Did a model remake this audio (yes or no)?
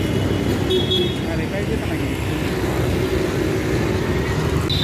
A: no